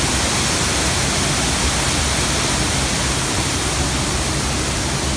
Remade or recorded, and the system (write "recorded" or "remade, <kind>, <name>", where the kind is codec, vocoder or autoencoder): recorded